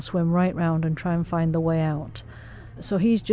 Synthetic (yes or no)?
no